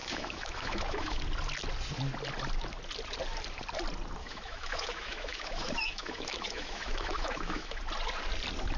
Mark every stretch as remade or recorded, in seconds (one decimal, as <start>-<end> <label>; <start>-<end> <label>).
0.0-1.2 remade; 1.2-4.2 recorded; 4.2-7.8 remade; 7.8-8.8 recorded